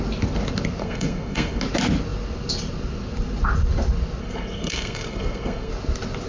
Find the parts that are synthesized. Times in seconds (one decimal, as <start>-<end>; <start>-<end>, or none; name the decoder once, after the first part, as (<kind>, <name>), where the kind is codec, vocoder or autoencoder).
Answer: 0.8-1.6 (codec, SNAC); 4.2-5.7